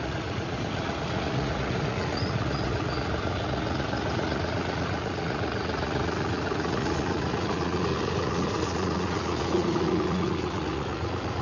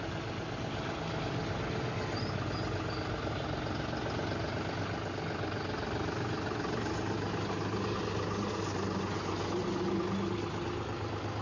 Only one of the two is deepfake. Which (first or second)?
first